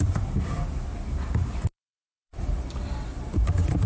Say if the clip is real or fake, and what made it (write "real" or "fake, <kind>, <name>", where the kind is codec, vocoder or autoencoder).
real